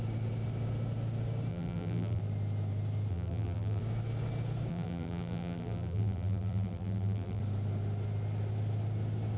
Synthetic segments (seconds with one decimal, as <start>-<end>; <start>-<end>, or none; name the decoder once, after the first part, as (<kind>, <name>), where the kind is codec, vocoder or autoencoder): 1.5-2.2 (vocoder, BigVGAN v2); 3.1-3.8; 4.7-7.4